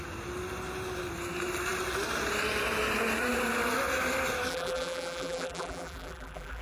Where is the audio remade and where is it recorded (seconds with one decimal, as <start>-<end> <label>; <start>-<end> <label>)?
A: 0.0-4.5 recorded; 4.5-6.6 remade